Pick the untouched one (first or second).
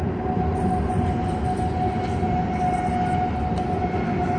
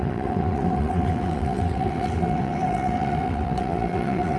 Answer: first